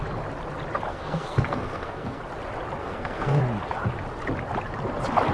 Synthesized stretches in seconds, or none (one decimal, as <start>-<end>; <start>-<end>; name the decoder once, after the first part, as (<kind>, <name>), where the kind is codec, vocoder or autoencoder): 0.9-2.2 (codec, SNAC); 2.8-3.4